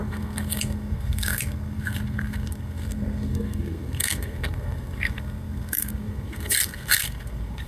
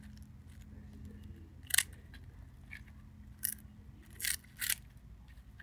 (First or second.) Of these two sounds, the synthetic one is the first